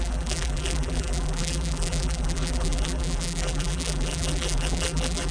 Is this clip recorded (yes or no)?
no